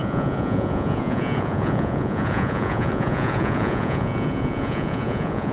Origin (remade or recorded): remade